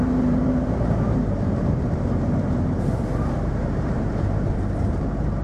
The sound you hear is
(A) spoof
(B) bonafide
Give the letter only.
A